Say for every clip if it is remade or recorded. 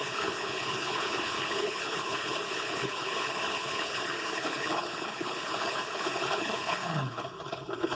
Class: remade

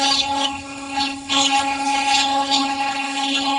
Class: remade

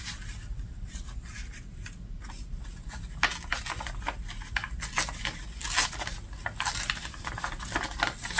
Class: recorded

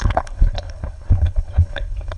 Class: remade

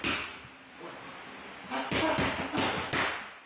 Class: recorded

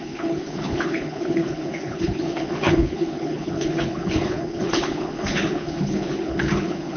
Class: remade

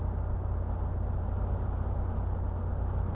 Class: recorded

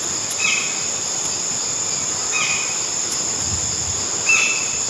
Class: recorded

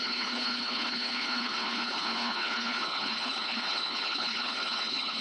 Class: remade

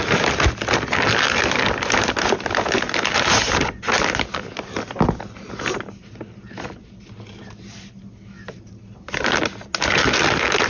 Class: recorded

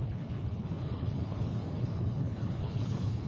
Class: remade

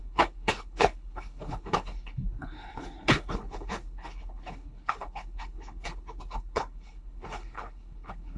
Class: remade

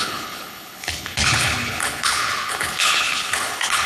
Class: remade